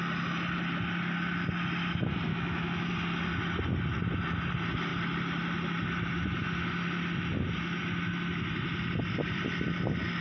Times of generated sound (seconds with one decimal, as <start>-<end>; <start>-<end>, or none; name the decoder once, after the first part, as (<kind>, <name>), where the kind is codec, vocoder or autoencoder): 2.3-2.9 (autoencoder, DAC-VAE)